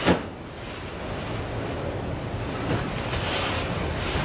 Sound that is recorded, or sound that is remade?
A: recorded